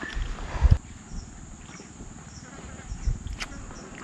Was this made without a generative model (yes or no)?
yes